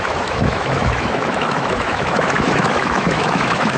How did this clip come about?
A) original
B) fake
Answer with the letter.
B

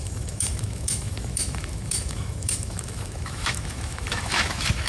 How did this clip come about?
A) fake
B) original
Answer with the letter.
A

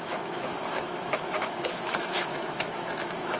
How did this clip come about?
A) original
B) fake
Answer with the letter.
B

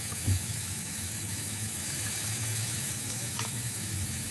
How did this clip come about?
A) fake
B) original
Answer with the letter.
A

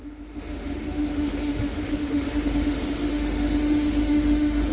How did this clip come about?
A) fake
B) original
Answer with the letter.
A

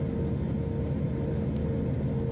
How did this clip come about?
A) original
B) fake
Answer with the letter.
A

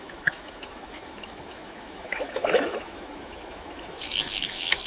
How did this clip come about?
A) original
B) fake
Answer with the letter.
B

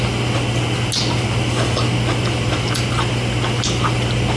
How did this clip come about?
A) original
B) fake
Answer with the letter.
A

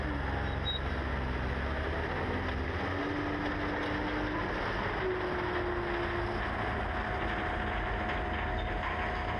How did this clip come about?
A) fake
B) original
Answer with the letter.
B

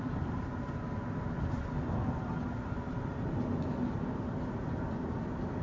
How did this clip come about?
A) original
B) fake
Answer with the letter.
A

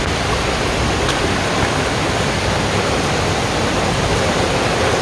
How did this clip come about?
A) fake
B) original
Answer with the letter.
B